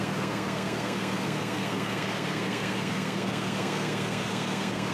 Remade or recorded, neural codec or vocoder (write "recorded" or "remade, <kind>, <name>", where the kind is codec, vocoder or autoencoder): remade, codec, SNAC